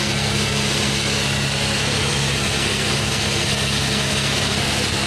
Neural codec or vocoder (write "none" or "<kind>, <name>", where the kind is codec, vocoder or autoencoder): codec, SNAC